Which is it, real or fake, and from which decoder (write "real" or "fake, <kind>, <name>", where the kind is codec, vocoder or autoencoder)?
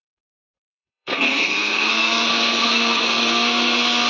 fake, codec, SNAC